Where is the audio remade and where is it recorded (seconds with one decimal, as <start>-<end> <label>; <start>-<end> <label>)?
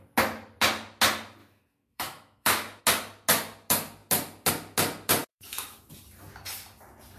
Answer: 0.0-1.4 recorded; 1.4-2.8 remade; 2.8-5.3 recorded; 5.3-5.9 remade; 5.9-7.2 recorded